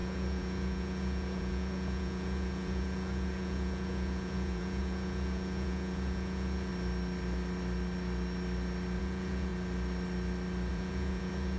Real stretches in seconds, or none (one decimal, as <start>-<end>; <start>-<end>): 6.7-9.0; 9.5-10.7